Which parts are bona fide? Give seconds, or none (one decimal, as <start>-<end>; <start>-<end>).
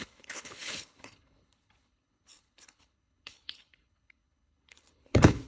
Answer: none